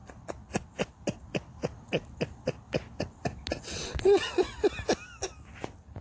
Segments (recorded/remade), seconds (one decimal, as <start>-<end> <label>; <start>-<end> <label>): 0.0-3.6 recorded; 3.6-4.6 remade; 4.6-6.0 recorded